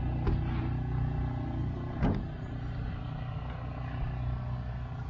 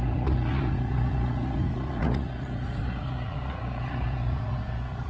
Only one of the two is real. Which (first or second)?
first